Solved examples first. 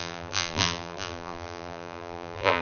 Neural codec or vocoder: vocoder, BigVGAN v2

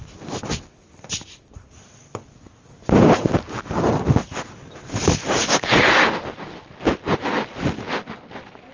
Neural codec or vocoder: none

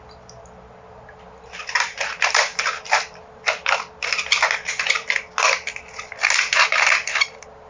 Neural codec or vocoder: none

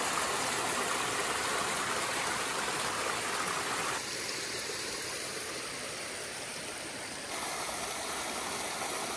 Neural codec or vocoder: none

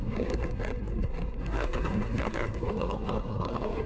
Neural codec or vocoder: codec, SNAC